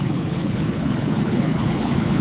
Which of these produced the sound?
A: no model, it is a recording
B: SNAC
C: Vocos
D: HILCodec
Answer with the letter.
D